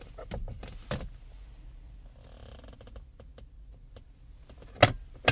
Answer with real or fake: real